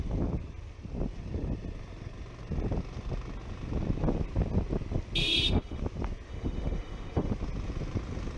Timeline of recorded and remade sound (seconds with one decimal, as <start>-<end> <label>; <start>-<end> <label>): 0.0-5.2 recorded; 5.2-5.8 remade; 5.8-6.3 recorded; 6.3-7.3 remade; 7.3-8.4 recorded